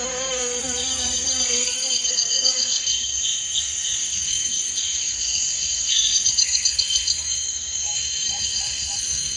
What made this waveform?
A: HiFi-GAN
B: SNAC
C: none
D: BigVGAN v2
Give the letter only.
B